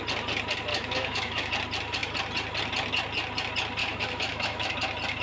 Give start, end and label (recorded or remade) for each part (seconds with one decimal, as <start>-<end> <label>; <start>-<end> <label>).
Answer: 0.0-0.7 recorded; 0.7-1.5 remade; 1.5-3.8 recorded; 3.8-4.7 remade; 4.7-5.2 recorded